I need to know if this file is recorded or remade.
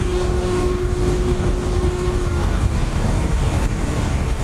remade